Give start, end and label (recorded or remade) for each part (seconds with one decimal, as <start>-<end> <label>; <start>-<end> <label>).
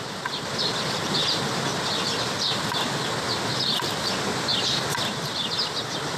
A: 0.0-6.2 recorded